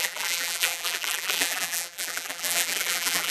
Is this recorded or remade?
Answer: remade